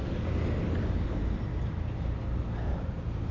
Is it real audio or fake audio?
real